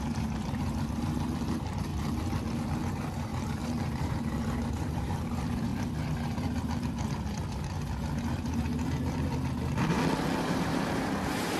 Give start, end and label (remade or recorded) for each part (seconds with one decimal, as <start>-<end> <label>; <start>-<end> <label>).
0.0-1.9 remade; 1.9-2.9 recorded; 2.9-5.7 remade; 5.7-10.4 recorded; 10.4-11.6 remade